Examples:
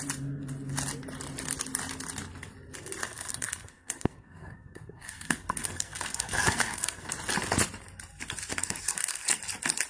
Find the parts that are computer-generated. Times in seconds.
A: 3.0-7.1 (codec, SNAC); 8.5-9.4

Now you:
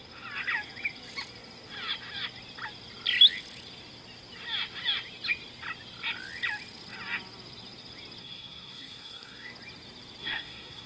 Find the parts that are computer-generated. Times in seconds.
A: 8.2-9.5 (codec, SNAC); 10.2-10.9